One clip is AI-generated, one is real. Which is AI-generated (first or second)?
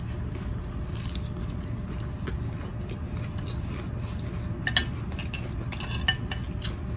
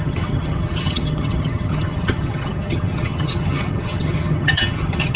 second